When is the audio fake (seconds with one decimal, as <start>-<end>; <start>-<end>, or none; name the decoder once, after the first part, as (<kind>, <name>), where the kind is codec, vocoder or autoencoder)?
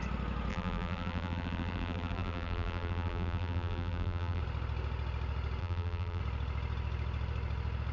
0.5-4.4 (vocoder, BigVGAN v2); 5.6-6.2